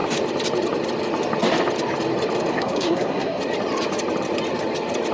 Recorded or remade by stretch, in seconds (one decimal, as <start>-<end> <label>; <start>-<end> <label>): 0.0-2.5 recorded; 2.5-3.4 remade; 3.4-5.1 recorded